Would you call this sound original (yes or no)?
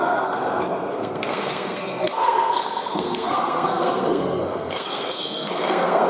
no